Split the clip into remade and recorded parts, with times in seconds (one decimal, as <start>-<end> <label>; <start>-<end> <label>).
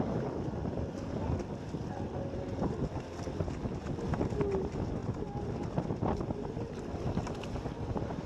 0.0-8.3 recorded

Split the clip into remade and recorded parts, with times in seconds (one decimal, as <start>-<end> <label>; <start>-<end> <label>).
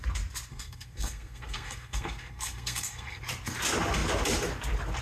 0.0-0.5 recorded; 0.5-3.2 remade; 3.2-5.0 recorded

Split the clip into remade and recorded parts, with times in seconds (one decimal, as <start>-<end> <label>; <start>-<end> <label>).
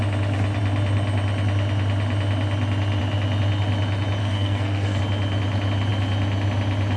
0.0-4.2 recorded; 4.2-5.0 remade; 5.0-7.0 recorded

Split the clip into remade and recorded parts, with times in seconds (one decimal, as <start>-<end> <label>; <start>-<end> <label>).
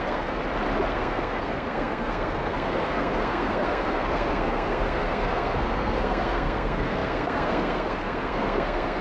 0.0-0.4 remade; 0.4-0.9 recorded; 0.9-9.0 remade